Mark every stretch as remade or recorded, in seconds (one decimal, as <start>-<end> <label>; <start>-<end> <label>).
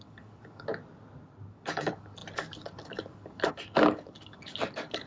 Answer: 0.0-0.7 remade; 0.7-1.5 recorded; 1.5-5.1 remade